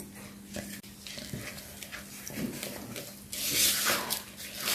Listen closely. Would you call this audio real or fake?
real